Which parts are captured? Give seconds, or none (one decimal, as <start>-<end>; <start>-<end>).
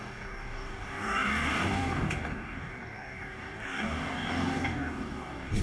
none